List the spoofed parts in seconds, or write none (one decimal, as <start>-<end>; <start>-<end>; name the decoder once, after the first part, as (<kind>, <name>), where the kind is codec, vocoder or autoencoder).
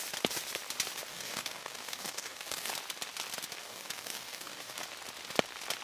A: 1.1-2.7 (codec, DAC); 3.6-4.8